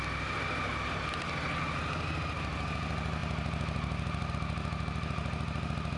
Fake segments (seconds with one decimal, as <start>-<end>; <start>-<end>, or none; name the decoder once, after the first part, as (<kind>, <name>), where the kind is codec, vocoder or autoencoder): none